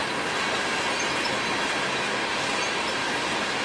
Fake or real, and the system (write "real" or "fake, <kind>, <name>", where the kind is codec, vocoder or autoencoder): real